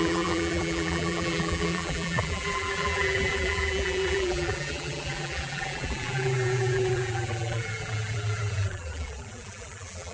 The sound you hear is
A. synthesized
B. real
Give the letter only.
A